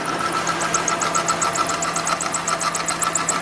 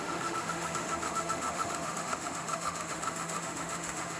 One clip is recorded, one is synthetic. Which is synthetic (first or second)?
second